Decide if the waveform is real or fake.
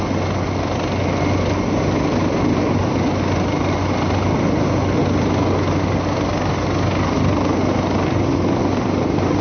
real